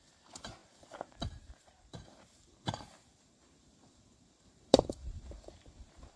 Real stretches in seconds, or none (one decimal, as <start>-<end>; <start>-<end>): none